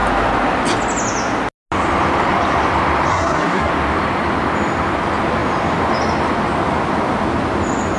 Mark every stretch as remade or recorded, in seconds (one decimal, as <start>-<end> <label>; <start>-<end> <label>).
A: 0.0-3.1 recorded; 3.1-3.7 remade; 3.7-8.0 recorded